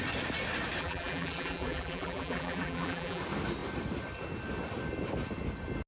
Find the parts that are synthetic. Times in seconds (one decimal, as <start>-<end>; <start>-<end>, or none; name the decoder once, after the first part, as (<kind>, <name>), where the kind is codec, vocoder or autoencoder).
0.8-3.2 (vocoder, BigVGAN v2)